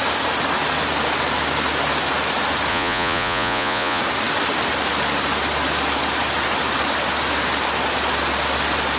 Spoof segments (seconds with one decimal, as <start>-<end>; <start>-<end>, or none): 2.7-4.0